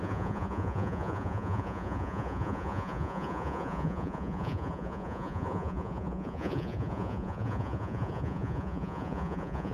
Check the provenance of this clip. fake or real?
fake